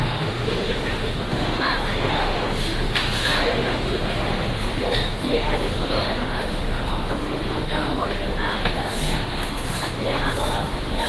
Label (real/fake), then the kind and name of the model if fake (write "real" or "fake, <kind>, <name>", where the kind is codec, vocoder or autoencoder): fake, autoencoder, DAC-VAE